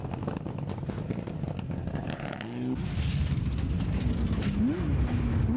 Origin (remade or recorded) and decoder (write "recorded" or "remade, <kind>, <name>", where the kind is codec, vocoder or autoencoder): recorded